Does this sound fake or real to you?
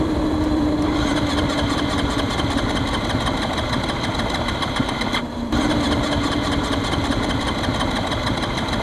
fake